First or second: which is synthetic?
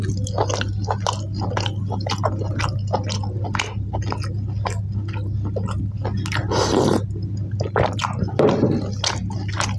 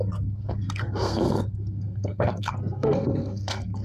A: second